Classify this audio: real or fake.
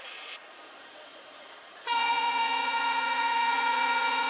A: fake